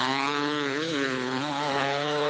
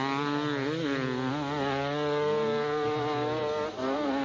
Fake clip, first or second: first